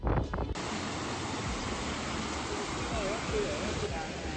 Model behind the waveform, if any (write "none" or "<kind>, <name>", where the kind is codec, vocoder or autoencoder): none